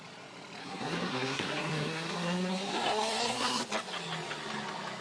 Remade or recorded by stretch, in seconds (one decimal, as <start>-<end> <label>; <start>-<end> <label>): 0.0-0.6 recorded; 0.6-3.6 remade; 3.6-5.0 recorded